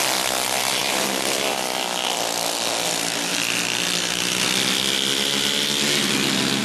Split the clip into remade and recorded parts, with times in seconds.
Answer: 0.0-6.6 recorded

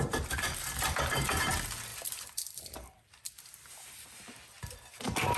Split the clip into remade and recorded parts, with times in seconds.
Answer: 0.0-1.9 recorded; 1.9-3.1 remade; 3.1-5.4 recorded

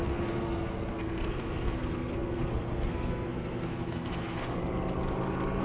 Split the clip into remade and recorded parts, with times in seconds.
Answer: 0.0-4.6 remade; 4.6-5.6 recorded